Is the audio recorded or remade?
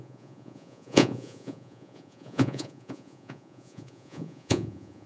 remade